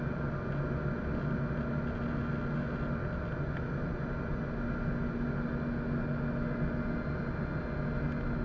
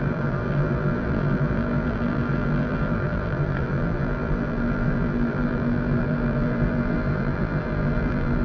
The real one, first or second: first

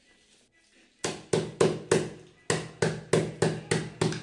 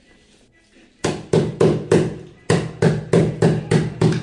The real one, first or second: first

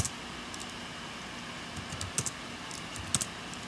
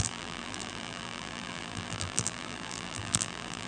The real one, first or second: first